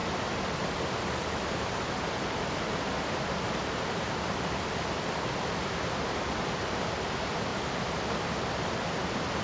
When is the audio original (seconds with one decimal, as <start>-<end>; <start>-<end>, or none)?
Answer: 0.0-7.5; 8.2-9.4